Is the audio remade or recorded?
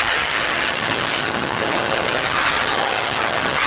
remade